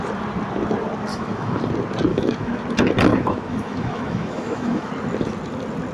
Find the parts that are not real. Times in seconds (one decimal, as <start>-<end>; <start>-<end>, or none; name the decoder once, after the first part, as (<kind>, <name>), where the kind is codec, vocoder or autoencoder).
1.1-1.6 (autoencoder, DAC-VAE); 2.1-2.6; 3.1-4.9